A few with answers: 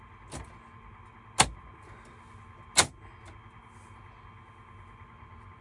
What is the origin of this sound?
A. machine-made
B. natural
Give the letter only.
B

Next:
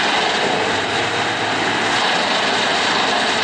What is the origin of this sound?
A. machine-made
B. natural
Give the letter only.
B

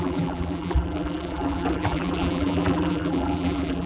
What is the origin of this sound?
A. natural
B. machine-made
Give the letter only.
B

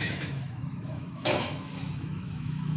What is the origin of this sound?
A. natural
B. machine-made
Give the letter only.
B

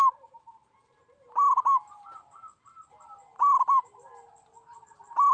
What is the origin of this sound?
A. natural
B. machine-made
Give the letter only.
A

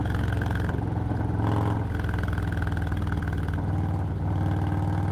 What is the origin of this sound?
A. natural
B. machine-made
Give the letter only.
A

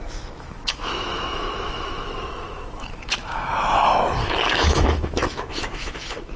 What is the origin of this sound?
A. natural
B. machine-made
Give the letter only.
B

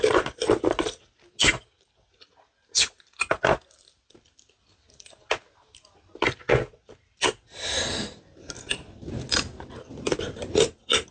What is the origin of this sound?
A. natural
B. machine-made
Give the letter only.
A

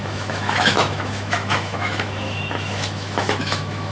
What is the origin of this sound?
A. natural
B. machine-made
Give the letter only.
B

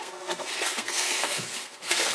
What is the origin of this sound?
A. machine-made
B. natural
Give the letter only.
A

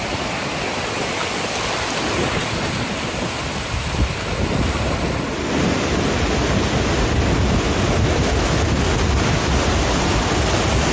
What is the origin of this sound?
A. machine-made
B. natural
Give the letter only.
B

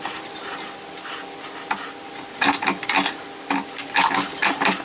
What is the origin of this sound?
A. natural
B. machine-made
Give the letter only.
A